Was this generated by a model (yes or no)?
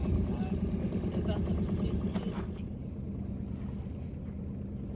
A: no